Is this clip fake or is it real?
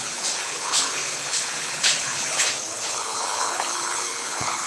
fake